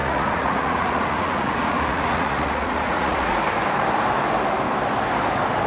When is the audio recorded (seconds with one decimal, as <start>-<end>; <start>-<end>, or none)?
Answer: 3.4-5.7